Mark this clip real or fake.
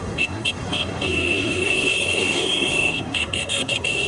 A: fake